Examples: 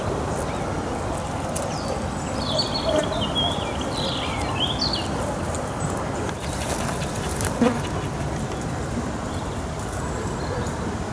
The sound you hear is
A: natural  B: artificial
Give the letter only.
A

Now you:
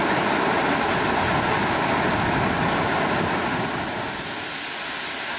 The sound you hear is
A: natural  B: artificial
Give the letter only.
B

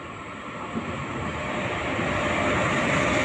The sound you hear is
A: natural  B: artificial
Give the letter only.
A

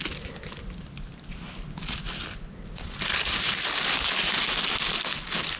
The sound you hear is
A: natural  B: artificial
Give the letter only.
A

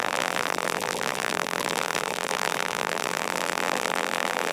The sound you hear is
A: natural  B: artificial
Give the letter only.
B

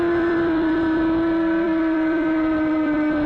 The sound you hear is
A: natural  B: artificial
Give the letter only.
B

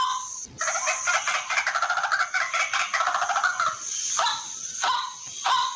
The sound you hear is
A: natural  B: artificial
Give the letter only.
A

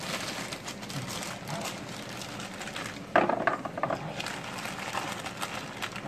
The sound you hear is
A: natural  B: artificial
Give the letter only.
A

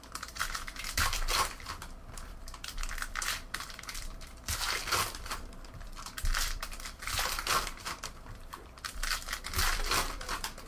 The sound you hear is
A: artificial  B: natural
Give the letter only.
A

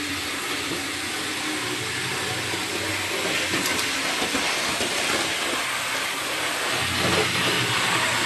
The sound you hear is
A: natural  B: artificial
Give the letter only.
A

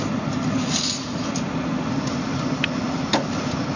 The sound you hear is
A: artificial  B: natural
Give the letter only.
B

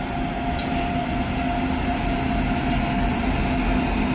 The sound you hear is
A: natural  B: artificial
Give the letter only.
A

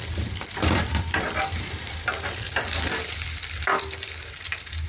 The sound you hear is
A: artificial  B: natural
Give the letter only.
A